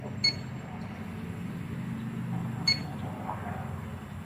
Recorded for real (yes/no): yes